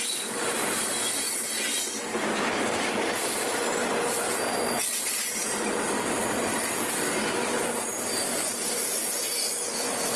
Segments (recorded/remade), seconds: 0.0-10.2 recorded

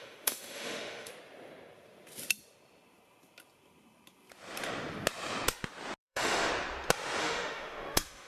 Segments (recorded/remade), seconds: 0.0-1.1 remade; 1.1-6.0 recorded; 6.0-6.5 remade; 6.5-7.2 recorded; 7.2-8.3 remade

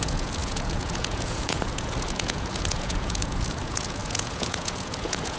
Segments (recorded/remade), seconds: 0.0-5.4 remade

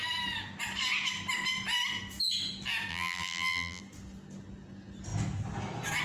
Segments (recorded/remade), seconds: 0.0-2.9 recorded; 2.9-3.8 remade; 3.8-6.0 recorded

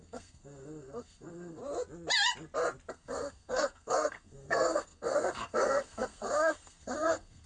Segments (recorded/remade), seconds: 0.0-1.6 remade; 1.6-2.9 recorded; 2.9-7.5 remade

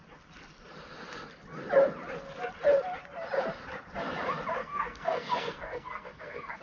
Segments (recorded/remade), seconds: 0.0-4.6 recorded; 4.6-6.6 remade